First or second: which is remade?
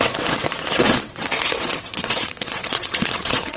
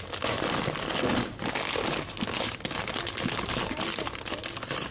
first